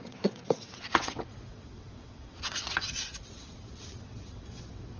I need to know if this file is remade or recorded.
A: remade